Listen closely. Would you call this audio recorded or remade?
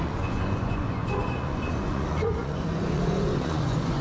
remade